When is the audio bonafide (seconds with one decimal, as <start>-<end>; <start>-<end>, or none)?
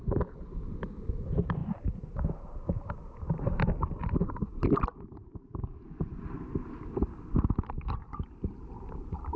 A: 0.0-9.4